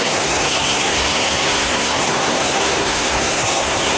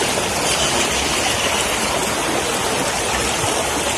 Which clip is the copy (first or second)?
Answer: first